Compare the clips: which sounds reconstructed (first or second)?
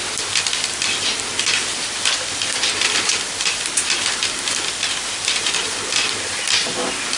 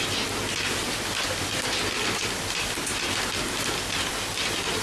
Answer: first